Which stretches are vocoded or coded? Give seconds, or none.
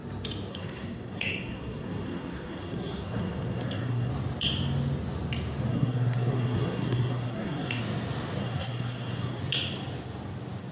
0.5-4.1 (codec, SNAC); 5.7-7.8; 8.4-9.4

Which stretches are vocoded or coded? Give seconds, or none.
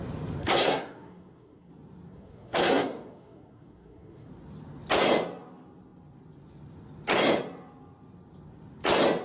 0.4-1.7 (codec, SNAC); 2.1-4.3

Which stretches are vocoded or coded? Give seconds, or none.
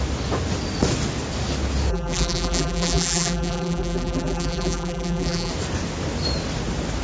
1.9-5.5 (vocoder, BigVGAN v2)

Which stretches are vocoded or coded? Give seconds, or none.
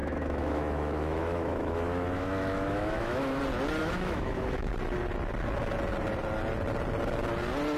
0.0-3.4 (autoencoder, DAC-VAE); 3.8-4.7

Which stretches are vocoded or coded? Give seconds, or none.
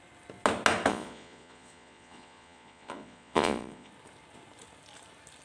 0.9-3.9 (vocoder, Vocos)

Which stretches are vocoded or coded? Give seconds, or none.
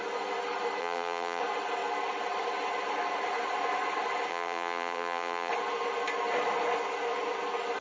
0.8-1.4 (vocoder, BigVGAN v2); 4.3-5.5